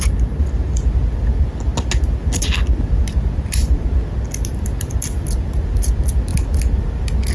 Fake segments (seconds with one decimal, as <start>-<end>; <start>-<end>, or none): none

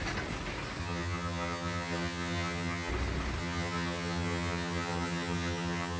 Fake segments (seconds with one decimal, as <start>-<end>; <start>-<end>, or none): 0.8-2.9; 3.4-6.0

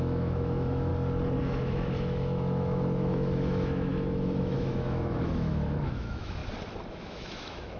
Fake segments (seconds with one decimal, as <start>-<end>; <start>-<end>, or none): 0.0-0.9; 1.4-6.4; 6.9-7.8